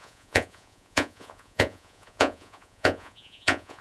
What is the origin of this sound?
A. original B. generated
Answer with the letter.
B